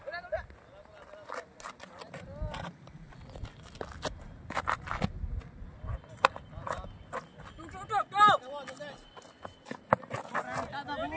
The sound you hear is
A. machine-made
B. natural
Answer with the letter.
B